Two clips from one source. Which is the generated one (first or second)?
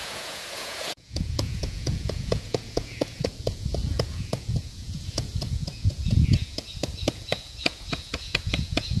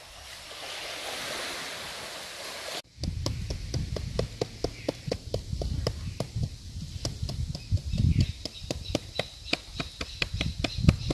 first